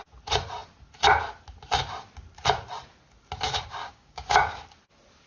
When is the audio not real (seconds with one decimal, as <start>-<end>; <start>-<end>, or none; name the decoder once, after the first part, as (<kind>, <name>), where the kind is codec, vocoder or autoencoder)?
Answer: 3.8-4.6 (codec, DAC)